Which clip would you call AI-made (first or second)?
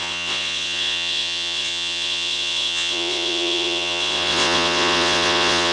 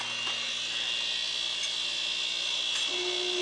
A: first